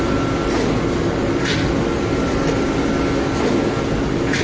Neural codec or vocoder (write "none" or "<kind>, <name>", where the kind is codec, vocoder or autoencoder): none